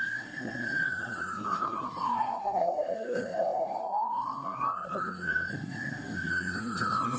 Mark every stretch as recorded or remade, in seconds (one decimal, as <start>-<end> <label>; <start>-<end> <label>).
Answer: 0.0-7.2 remade